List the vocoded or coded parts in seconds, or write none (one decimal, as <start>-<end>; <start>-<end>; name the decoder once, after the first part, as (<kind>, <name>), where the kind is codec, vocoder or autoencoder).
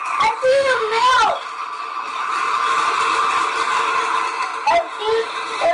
0.5-1.1 (autoencoder, DAC-VAE)